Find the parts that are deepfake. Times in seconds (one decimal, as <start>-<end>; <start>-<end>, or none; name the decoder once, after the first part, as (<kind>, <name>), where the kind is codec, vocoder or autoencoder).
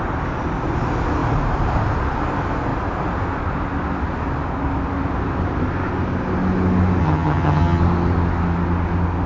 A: 7.0-7.8 (vocoder, HiFi-GAN)